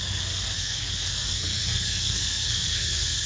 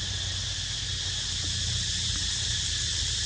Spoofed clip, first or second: first